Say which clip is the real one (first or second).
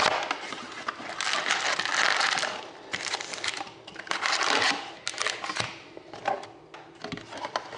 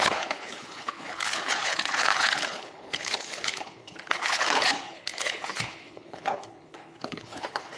first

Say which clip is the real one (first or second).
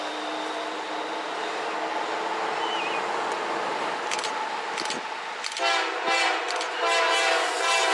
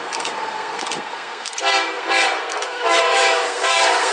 first